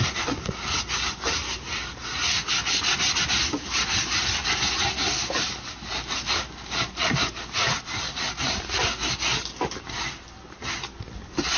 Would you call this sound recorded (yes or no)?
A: yes